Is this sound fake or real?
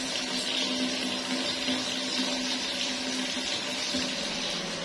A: real